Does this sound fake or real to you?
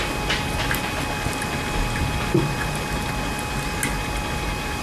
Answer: real